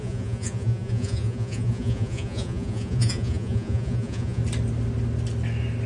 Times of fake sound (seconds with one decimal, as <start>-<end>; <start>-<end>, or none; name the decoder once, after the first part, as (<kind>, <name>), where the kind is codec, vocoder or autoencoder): 0.0-4.4 (vocoder, Vocos)